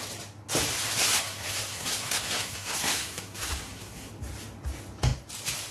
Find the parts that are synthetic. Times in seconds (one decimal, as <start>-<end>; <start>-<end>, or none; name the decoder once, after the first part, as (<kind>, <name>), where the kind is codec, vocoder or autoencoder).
1.0-4.1 (codec, SNAC)